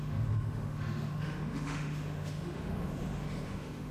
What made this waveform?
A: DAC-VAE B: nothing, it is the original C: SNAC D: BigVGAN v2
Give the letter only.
A